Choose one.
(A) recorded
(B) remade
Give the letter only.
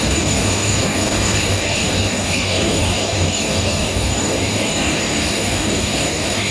B